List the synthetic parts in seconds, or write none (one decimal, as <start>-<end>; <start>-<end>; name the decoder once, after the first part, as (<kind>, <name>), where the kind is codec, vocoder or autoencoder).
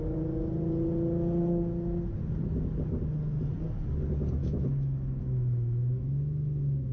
4.4-6.9 (autoencoder, DAC-VAE)